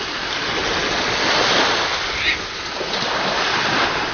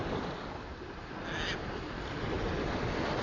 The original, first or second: second